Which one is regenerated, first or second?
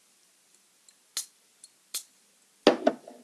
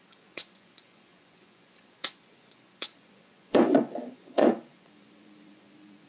second